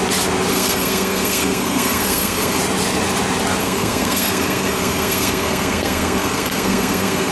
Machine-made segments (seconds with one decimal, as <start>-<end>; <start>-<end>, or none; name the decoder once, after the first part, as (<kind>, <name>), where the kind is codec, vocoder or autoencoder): 0.5-2.6 (codec, SNAC); 3.6-7.3